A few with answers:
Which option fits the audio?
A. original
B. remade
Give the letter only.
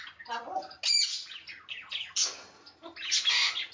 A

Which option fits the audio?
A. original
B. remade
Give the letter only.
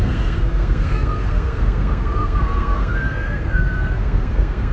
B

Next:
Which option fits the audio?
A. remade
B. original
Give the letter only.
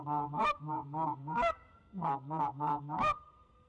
A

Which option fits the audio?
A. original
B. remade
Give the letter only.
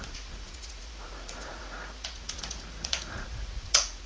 B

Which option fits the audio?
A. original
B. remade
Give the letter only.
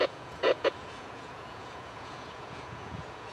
B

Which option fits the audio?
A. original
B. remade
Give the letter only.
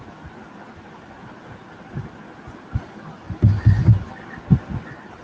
A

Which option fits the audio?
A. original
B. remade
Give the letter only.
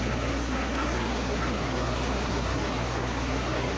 B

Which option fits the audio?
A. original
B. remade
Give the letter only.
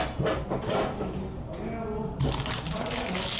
A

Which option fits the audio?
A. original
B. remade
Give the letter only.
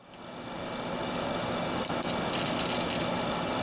A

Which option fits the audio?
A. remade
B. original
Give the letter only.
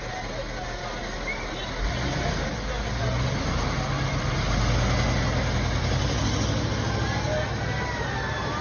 B